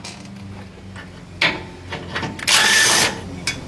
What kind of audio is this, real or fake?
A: real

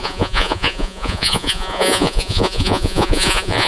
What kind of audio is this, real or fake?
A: fake